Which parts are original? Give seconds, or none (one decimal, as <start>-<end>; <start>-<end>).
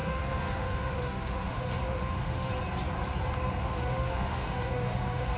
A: 2.5-3.6